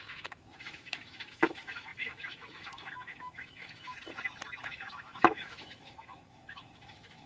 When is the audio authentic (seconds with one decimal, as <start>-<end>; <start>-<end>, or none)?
3.9-4.6

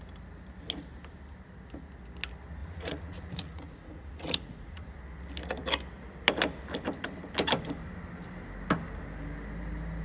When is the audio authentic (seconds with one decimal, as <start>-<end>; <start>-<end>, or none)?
0.0-2.6; 5.0-10.0

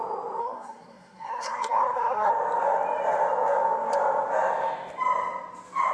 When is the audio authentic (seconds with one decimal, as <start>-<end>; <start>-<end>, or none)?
0.0-0.4; 2.3-5.9

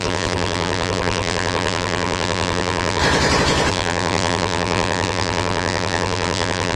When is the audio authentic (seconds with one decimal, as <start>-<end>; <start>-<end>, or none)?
3.0-3.7

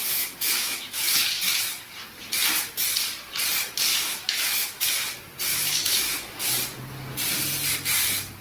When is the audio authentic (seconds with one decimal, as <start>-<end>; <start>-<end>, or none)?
1.6-3.9; 4.9-5.5; 6.4-8.4